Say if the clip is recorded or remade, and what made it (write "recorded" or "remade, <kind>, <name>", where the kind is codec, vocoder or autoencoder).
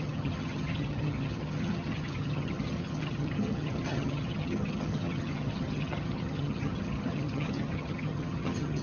remade, vocoder, HiFi-GAN